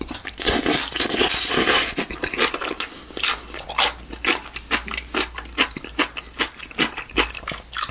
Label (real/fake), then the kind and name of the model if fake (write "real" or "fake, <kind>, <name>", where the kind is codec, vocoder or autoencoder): real